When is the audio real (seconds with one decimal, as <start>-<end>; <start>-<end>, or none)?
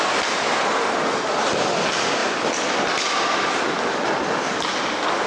0.0-5.3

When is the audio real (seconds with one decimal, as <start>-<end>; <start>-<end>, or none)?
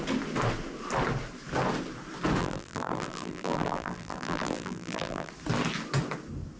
0.0-2.4; 5.3-6.6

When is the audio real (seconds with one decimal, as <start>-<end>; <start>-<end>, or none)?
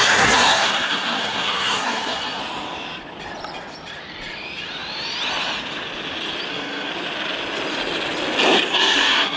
2.4-6.5; 6.9-8.7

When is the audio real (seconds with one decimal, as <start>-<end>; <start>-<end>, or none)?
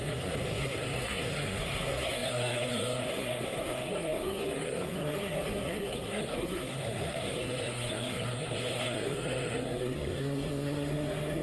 none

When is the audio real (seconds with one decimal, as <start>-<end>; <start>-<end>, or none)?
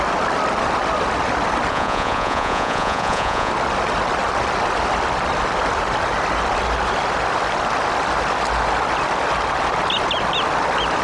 0.0-1.7; 3.5-11.0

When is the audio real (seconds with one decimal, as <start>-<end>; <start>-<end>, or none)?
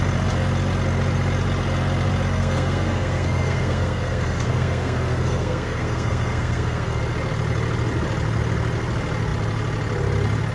0.0-2.4; 7.0-10.5